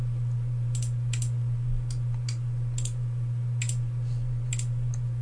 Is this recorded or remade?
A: recorded